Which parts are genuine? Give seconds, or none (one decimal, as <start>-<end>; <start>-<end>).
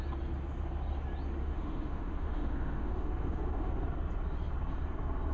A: 0.0-1.4; 3.7-5.3